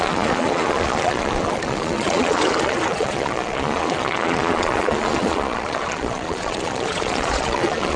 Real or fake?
fake